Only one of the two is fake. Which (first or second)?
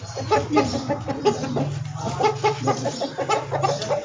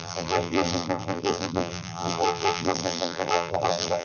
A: second